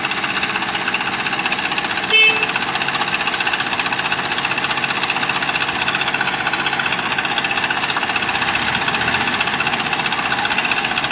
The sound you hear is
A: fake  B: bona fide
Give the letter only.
B